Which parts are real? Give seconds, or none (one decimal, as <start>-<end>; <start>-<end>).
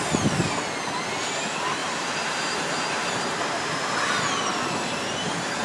0.0-1.8; 4.0-4.5